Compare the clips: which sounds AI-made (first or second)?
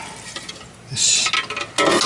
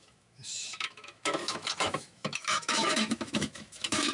second